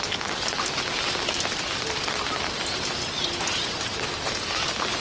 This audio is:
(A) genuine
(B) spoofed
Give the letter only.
A